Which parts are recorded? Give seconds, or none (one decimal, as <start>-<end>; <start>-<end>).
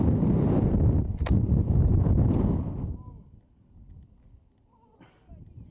0.0-5.7